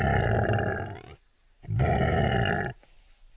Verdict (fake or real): real